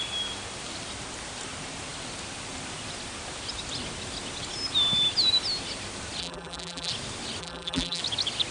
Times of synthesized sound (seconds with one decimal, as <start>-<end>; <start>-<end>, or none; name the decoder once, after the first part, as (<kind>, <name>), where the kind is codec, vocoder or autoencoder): 6.2-6.9 (vocoder, BigVGAN v2); 7.4-8.0